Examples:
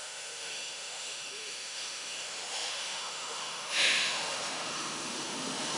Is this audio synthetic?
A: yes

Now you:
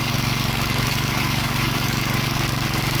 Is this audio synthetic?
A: yes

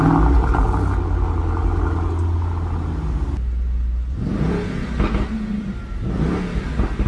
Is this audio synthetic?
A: no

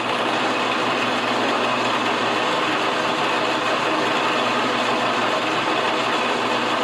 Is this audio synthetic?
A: no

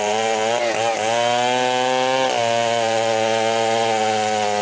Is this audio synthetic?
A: no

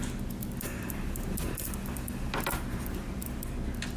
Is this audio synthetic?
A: no